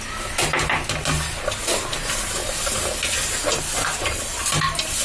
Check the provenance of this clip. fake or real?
real